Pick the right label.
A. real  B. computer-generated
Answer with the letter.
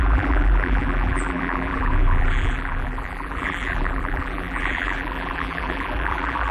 B